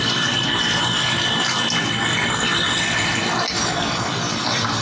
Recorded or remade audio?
recorded